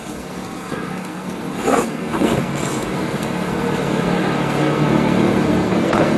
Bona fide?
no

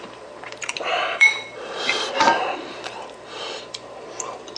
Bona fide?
no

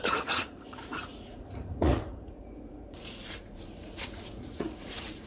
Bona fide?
no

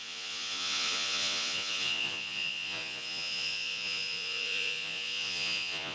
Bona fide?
no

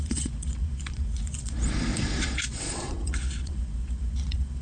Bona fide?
no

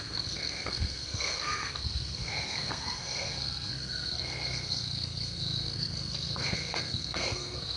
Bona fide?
no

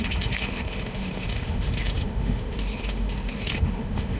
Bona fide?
no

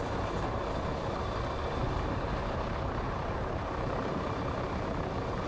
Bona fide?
no